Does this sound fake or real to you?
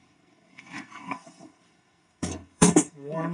fake